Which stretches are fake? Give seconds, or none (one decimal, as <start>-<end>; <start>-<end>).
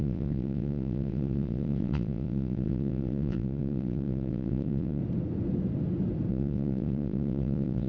0.0-5.0; 6.3-7.9